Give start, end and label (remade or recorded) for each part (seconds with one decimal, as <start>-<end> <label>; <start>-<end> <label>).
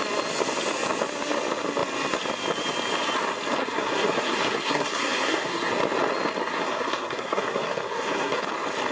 0.0-3.6 recorded; 3.6-5.7 remade; 5.7-6.4 recorded; 6.4-8.4 remade; 8.4-8.9 recorded